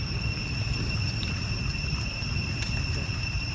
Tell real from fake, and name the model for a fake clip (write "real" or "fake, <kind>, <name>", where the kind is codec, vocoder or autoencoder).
fake, vocoder, BigVGAN v2